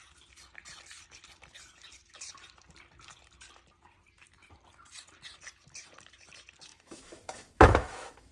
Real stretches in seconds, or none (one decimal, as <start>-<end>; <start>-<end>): 0.0-6.7